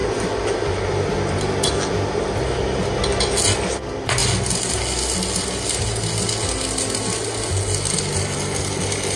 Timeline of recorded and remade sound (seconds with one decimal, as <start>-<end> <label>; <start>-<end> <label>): 0.0-9.2 recorded